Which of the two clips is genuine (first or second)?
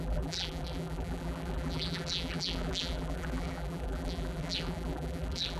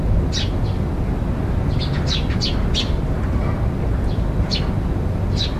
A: second